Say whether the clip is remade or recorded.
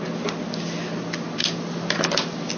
recorded